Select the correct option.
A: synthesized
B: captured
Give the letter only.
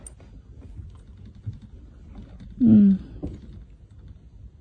B